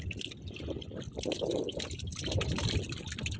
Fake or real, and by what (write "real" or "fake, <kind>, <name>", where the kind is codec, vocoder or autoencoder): fake, vocoder, BigVGAN v2